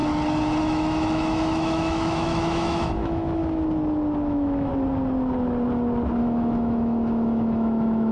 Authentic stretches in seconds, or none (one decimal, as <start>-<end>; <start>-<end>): 0.0-0.6; 3.4-4.3; 4.7-6.2

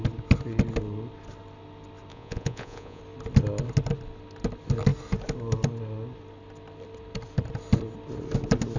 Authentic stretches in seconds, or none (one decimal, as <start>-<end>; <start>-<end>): 0.0-2.1; 3.0-8.8

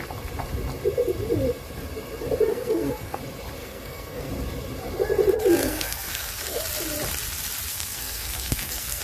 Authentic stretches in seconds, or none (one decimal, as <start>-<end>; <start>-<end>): 0.0-2.5; 3.2-3.6; 4.3-5.6; 6.6-7.7

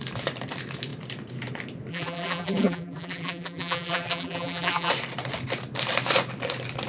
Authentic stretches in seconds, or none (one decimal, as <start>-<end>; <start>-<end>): 0.0-1.9; 4.9-6.9